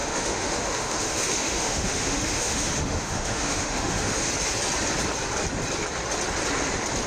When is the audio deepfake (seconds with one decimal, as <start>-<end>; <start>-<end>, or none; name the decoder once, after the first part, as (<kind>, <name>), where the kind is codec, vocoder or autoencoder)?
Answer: 0.0-4.3 (autoencoder, DAC-VAE)